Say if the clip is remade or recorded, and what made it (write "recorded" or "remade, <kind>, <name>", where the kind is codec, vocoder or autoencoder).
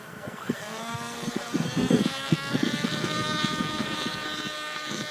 remade, codec, SNAC